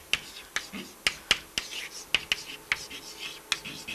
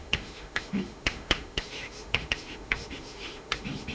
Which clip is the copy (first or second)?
second